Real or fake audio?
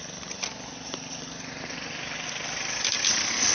real